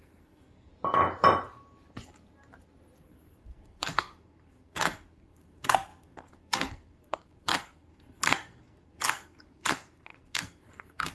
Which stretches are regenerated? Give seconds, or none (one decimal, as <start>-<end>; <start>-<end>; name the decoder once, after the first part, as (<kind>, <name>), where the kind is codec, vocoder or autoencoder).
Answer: 0.0-0.7 (codec, SNAC); 3.0-11.1